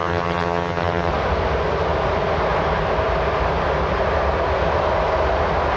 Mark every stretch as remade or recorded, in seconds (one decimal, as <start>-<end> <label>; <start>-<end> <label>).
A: 0.0-1.1 remade; 1.1-5.8 recorded